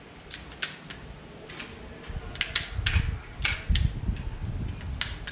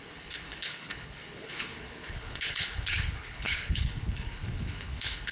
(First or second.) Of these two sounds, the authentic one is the first